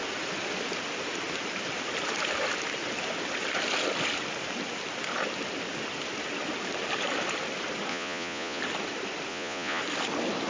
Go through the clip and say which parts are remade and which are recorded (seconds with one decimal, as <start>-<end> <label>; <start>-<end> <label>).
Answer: 0.0-7.9 recorded; 7.9-8.6 remade; 8.6-9.3 recorded; 9.3-9.8 remade; 9.8-10.5 recorded

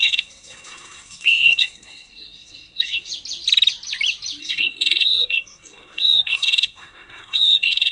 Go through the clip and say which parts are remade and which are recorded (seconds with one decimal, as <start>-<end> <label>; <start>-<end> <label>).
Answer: 0.0-3.1 remade; 3.1-4.4 recorded; 4.4-7.9 remade

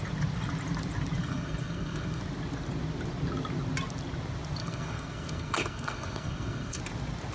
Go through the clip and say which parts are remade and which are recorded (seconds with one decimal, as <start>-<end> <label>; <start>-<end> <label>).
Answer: 0.0-1.2 recorded; 1.2-2.2 remade; 2.2-4.6 recorded; 4.6-6.8 remade; 6.8-7.3 recorded

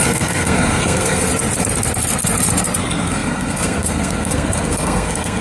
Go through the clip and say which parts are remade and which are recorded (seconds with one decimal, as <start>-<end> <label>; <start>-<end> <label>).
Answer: 0.0-1.3 remade; 1.3-2.8 recorded; 2.8-5.4 remade

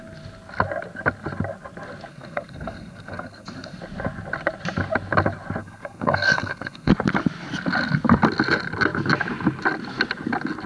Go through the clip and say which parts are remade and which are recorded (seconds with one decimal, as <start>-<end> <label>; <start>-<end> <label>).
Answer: 0.0-2.1 recorded; 2.1-3.8 remade; 3.8-5.6 recorded; 5.6-6.9 remade; 6.9-10.7 recorded

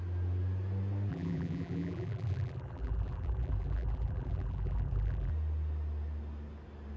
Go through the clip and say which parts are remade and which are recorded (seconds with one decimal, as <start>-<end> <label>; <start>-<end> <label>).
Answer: 0.0-1.1 recorded; 1.1-5.3 remade; 5.3-7.0 recorded